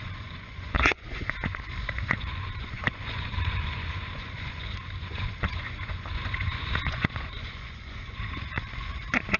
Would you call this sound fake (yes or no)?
yes